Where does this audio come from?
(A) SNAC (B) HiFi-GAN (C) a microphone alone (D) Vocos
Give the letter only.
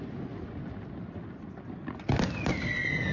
C